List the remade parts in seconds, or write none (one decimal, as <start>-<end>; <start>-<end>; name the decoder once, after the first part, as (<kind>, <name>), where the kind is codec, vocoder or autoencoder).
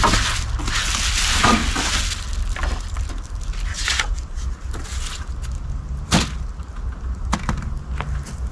none